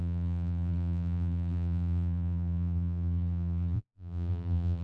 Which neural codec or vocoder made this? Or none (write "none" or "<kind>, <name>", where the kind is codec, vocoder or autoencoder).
vocoder, BigVGAN v2